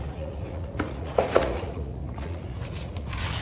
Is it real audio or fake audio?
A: fake